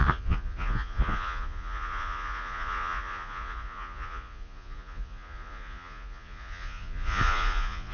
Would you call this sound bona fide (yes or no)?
no